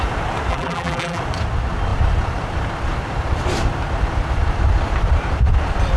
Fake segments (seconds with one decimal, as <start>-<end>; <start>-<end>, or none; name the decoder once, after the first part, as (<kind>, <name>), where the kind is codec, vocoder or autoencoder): 0.5-1.2 (vocoder, BigVGAN v2)